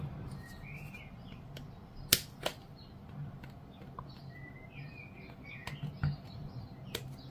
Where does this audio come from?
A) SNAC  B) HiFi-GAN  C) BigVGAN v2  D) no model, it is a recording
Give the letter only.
D